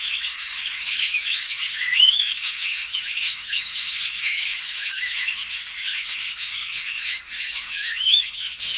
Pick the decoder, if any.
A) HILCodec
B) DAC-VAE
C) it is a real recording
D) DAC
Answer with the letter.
B